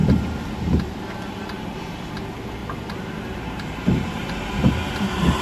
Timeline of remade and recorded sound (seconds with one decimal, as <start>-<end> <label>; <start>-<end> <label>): 0.0-1.7 remade; 1.7-2.6 recorded; 2.6-4.7 remade; 4.7-5.4 recorded